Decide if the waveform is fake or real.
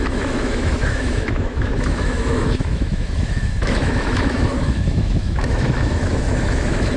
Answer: fake